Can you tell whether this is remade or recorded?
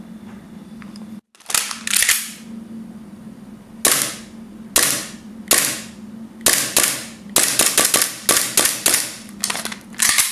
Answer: recorded